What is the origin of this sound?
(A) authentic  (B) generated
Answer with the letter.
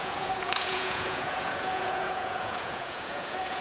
B